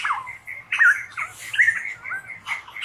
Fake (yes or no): no